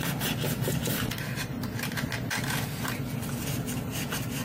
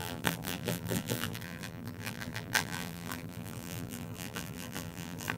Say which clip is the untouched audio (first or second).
first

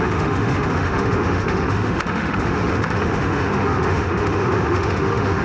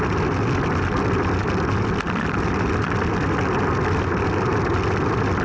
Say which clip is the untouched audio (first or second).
second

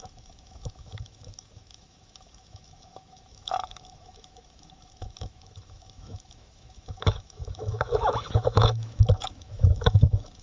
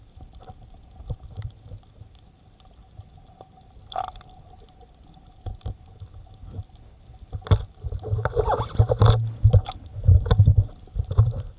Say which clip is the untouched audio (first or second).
second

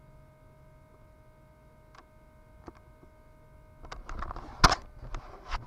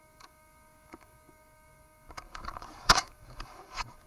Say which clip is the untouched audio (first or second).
first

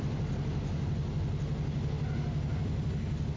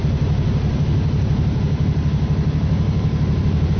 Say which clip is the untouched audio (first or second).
first